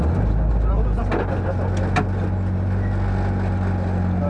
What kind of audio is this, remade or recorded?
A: recorded